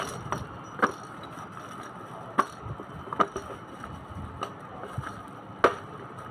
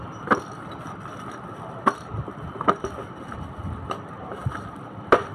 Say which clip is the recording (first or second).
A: first